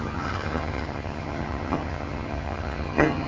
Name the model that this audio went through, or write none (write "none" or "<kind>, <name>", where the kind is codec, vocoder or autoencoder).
vocoder, HiFi-GAN